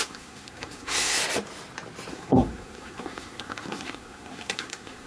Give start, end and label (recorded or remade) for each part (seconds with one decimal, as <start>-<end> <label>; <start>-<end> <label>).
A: 0.0-1.2 remade; 1.2-2.1 recorded; 2.1-5.1 remade